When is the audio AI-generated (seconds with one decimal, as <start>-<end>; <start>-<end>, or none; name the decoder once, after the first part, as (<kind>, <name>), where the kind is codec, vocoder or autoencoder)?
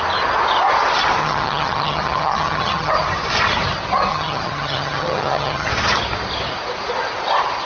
1.2-2.9 (vocoder, HiFi-GAN); 4.1-5.7